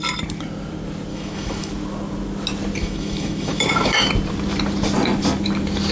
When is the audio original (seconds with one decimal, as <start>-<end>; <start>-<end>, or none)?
0.0-1.1; 1.7-2.8; 4.1-5.9